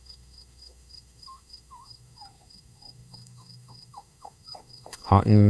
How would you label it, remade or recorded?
remade